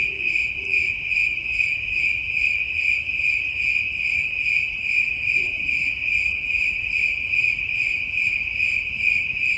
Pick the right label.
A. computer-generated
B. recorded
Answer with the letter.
A